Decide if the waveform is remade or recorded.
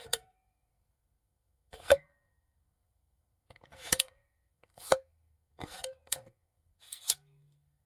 remade